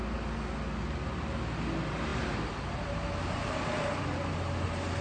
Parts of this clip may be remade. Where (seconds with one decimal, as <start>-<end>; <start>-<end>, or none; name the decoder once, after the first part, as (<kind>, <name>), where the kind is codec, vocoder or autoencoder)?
none